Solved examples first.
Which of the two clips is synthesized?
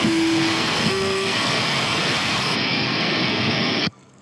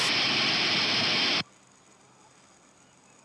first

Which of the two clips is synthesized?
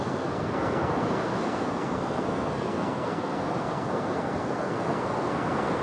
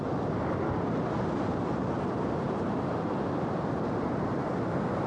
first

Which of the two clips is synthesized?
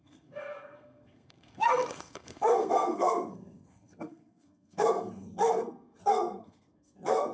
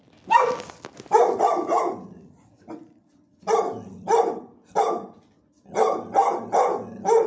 first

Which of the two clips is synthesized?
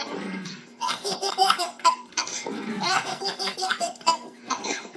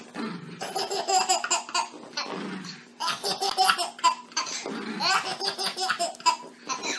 first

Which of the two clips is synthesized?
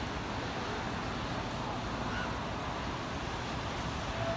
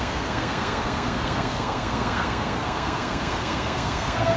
second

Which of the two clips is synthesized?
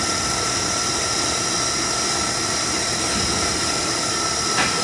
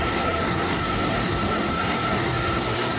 second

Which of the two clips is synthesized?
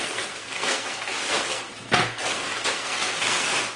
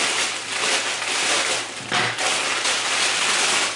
first